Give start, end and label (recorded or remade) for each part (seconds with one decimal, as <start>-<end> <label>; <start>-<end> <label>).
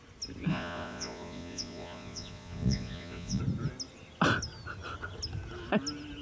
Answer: 0.0-0.5 recorded; 0.5-3.4 remade; 3.4-6.2 recorded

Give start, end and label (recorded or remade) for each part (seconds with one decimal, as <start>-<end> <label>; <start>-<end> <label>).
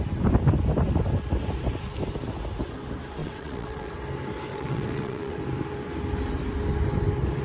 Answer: 0.0-3.2 recorded; 3.2-3.9 remade; 3.9-4.5 recorded; 4.5-5.4 remade; 5.4-7.4 recorded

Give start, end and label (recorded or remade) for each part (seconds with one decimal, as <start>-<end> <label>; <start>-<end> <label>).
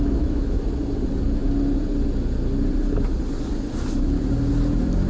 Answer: 0.0-0.7 remade; 0.7-5.1 recorded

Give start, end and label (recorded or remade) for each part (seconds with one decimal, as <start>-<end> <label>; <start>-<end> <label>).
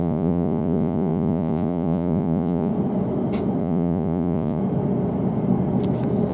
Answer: 0.0-2.7 remade; 2.7-3.6 recorded; 3.6-4.6 remade; 4.6-6.3 recorded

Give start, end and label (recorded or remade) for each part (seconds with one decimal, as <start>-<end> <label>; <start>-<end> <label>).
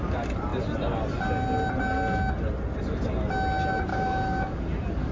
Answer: 0.0-3.9 recorded; 3.9-4.6 remade; 4.6-5.1 recorded